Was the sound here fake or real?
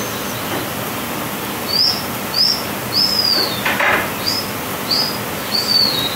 real